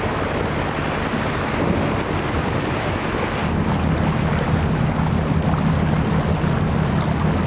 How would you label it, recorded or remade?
recorded